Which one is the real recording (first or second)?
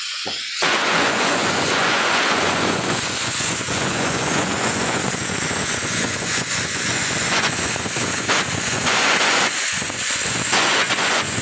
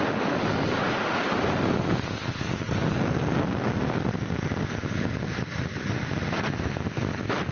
second